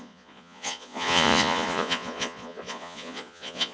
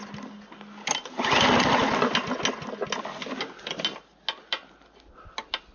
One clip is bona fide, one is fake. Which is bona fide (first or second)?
second